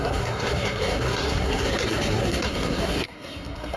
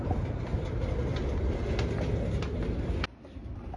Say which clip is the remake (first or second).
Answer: first